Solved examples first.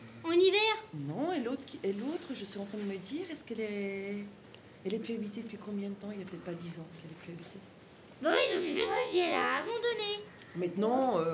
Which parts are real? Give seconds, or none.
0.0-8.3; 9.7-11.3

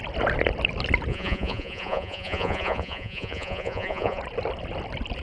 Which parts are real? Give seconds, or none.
0.0-1.1; 4.2-5.2

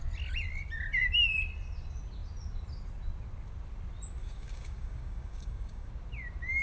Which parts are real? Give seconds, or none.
0.0-4.2; 5.9-6.6

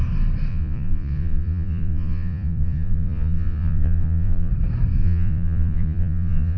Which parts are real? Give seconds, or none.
0.0-0.5; 4.5-5.0

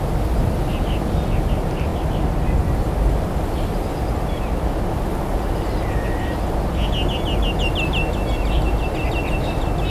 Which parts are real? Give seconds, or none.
0.0-9.9